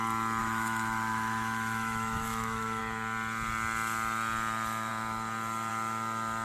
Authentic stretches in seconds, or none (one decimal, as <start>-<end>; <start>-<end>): 0.0-0.4; 2.8-6.4